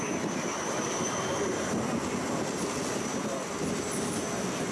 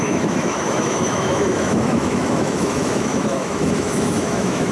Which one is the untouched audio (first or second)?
first